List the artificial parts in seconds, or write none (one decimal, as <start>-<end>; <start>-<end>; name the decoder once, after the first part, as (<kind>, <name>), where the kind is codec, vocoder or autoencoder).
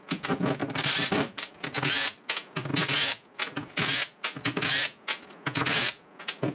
0.6-1.5 (vocoder, BigVGAN v2)